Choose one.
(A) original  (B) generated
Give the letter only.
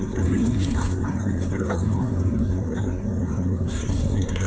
B